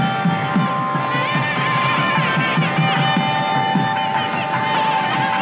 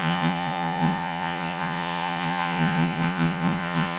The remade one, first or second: second